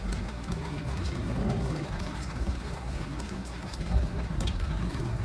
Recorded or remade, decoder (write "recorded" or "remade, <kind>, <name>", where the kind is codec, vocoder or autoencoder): remade, codec, SNAC